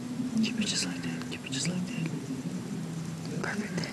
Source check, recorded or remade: recorded